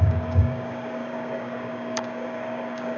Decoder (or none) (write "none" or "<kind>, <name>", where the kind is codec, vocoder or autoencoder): codec, DAC